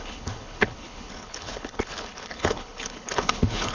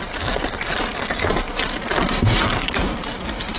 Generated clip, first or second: first